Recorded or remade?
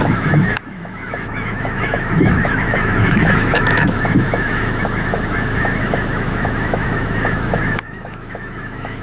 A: remade